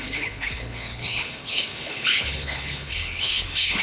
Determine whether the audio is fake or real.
fake